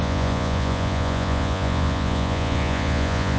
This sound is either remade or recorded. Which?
remade